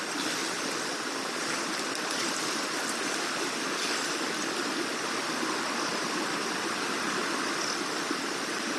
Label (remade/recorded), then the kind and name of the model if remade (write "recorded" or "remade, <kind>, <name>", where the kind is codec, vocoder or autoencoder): recorded